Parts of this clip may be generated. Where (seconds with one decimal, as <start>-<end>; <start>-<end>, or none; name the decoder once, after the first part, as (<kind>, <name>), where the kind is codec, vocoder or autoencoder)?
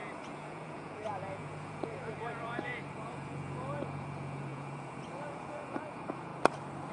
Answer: 0.0-6.3 (vocoder, Vocos)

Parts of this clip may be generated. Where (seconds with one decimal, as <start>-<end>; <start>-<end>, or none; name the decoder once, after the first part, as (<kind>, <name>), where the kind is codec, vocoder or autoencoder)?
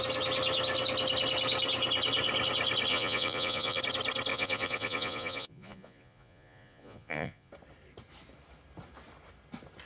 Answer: 2.9-3.8 (vocoder, Vocos); 4.3-7.5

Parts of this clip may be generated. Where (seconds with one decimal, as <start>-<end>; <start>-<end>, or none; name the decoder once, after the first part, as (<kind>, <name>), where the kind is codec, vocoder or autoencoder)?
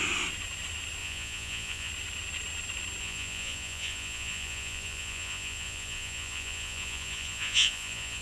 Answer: 1.0-1.9 (vocoder, Vocos); 3.0-8.2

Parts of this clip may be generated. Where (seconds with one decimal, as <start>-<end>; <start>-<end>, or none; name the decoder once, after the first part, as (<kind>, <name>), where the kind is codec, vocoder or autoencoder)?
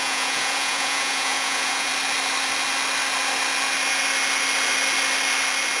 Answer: 0.0-1.9 (vocoder, Vocos)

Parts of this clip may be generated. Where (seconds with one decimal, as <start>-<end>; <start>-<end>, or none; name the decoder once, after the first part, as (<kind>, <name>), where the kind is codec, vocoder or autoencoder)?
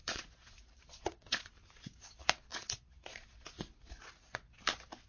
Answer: 0.0-1.5 (vocoder, Vocos); 2.5-4.0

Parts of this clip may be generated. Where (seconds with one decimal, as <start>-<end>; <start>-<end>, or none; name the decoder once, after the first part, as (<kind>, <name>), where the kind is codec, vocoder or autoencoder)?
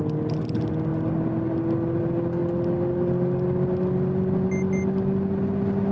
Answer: none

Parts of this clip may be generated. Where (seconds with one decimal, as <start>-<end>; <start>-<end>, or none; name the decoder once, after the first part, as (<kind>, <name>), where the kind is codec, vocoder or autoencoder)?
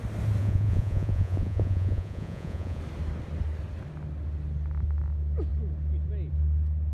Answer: 0.4-2.8 (vocoder, Vocos)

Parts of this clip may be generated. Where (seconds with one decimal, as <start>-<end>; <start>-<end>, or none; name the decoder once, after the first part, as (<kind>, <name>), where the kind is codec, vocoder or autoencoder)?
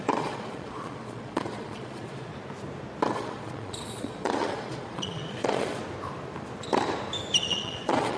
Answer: 0.0-2.3 (vocoder, Vocos); 3.1-5.8; 7.5-8.2